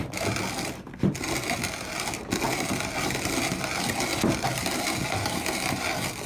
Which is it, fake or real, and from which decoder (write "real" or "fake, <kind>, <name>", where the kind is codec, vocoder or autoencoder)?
real